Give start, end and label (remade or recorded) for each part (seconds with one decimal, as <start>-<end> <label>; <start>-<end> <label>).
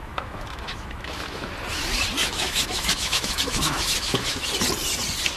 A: 0.0-1.5 remade; 1.5-2.2 recorded; 2.2-4.5 remade; 4.5-5.4 recorded